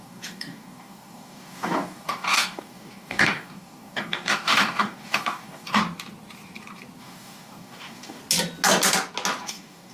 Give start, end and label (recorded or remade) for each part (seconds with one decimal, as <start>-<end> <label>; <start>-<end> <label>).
0.0-5.8 remade; 5.8-7.0 recorded; 7.0-8.2 remade; 8.2-9.4 recorded; 9.4-9.9 remade